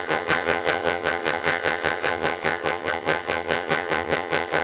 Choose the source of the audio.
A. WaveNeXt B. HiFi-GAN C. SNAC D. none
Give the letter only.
B